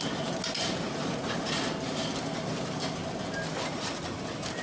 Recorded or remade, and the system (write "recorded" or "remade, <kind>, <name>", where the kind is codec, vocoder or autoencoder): recorded